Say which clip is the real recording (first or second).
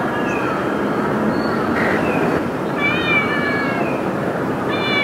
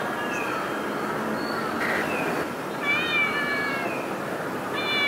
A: second